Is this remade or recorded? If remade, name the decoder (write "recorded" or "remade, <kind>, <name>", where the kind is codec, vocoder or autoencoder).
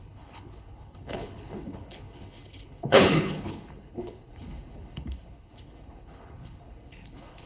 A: remade, codec, HILCodec